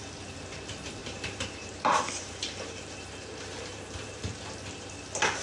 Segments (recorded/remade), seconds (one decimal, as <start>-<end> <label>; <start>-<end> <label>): 0.0-1.0 recorded; 1.0-4.2 remade; 4.2-5.4 recorded